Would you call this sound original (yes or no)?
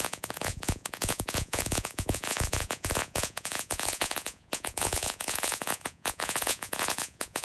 no